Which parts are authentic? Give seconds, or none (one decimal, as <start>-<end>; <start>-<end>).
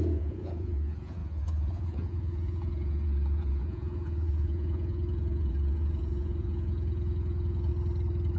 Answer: 7.7-8.4